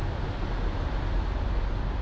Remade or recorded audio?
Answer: recorded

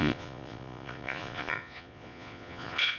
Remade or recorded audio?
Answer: remade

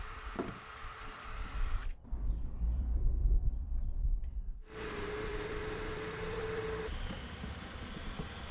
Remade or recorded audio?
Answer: remade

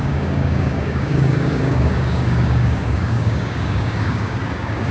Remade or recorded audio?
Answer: remade